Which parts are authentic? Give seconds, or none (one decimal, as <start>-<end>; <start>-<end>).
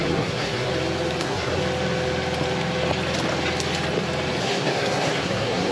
0.7-1.2; 1.6-4.4